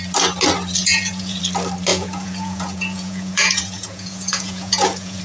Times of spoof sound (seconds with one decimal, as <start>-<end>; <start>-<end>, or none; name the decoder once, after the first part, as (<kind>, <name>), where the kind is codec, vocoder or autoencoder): 0.8-1.4 (vocoder, Vocos); 1.9-5.2